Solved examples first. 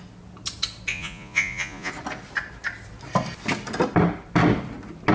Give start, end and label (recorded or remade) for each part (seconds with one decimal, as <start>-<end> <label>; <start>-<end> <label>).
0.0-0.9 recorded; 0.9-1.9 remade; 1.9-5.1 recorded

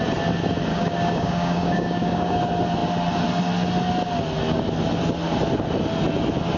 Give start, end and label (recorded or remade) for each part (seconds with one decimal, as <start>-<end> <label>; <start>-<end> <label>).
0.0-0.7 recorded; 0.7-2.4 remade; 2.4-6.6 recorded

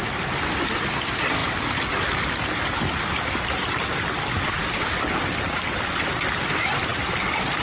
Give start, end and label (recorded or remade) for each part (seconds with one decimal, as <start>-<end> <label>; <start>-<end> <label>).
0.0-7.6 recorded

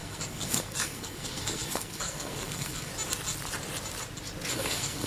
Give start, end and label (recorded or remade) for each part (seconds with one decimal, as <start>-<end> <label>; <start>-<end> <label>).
0.0-2.9 remade; 2.9-4.5 recorded; 4.5-5.1 remade